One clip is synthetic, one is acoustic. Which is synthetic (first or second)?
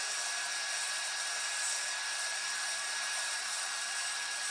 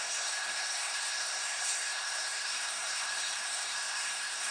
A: second